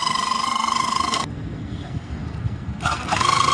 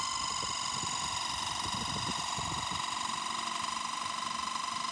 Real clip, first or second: second